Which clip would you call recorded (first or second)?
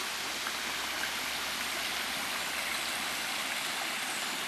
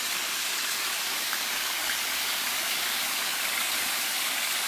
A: first